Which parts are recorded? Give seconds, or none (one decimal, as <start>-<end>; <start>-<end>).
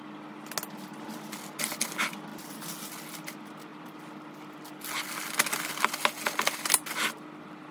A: 0.0-7.7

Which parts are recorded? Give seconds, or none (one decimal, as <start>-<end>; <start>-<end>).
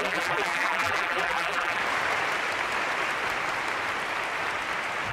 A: 1.8-5.1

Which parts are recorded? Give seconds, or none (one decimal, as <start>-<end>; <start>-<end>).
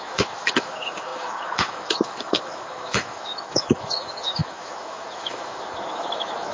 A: none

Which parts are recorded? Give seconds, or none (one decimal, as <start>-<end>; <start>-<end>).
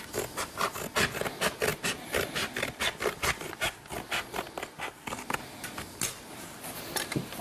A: 0.0-7.4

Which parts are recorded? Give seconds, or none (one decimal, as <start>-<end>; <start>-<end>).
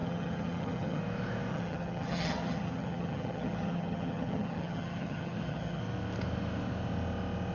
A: 1.0-1.5; 5.8-7.5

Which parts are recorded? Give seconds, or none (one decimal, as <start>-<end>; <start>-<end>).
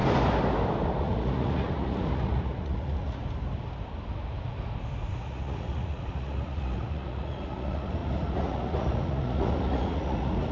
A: 0.0-1.0; 3.2-5.2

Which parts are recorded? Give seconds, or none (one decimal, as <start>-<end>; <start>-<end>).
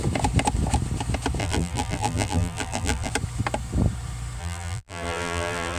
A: 0.0-1.4; 3.1-4.4